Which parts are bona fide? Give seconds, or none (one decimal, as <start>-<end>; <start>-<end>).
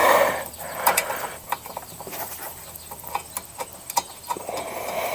3.1-5.1